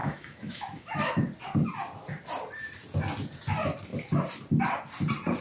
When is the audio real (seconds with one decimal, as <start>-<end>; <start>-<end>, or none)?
1.0-5.4